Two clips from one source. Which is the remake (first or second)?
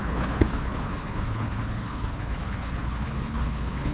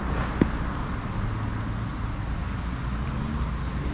first